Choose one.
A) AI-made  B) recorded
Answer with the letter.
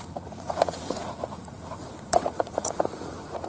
A